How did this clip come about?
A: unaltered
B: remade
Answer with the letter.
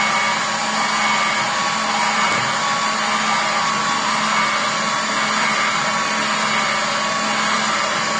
A